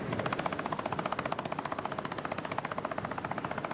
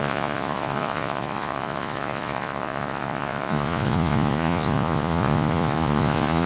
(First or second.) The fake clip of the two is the second